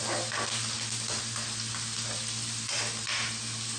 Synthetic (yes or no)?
no